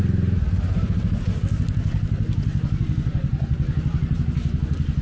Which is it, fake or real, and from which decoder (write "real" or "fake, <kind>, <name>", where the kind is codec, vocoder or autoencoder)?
real